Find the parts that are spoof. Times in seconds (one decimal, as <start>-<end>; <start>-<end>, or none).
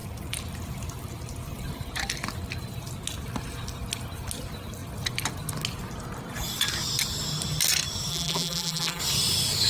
8.1-9.0